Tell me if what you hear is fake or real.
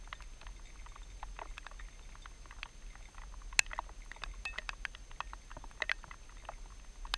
real